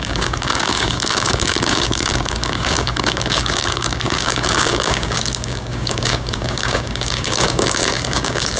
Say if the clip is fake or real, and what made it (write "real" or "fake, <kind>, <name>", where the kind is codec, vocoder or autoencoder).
fake, codec, DAC